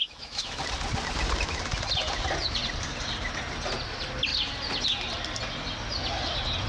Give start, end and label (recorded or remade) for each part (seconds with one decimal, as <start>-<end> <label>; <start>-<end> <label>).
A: 0.0-0.6 remade; 0.6-6.7 recorded